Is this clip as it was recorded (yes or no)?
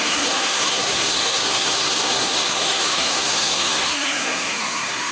no